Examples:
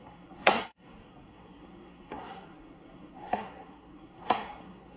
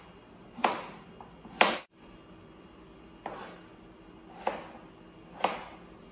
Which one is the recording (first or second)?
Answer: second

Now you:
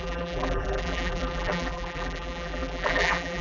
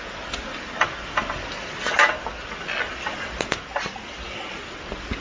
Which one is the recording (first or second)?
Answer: second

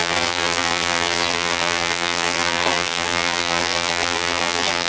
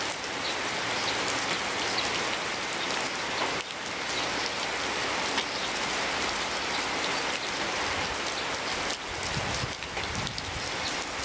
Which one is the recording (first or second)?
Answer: second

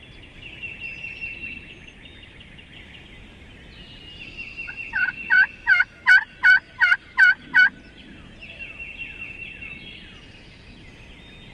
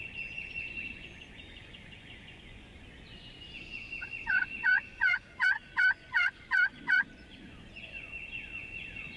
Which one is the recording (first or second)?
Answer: first